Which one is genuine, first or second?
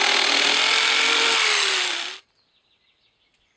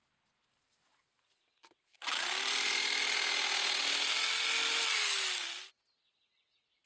second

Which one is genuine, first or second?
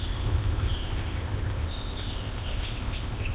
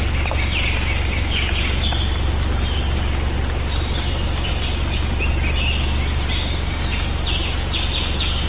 second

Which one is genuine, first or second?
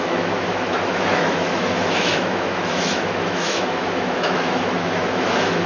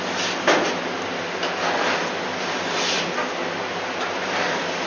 second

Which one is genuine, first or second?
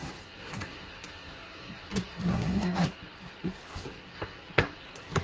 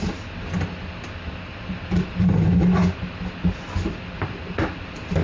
second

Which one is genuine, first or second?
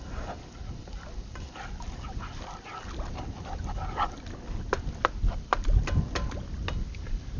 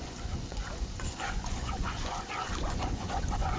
first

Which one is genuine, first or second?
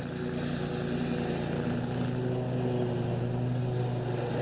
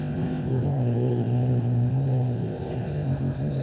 first